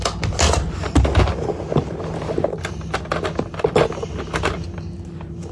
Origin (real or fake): real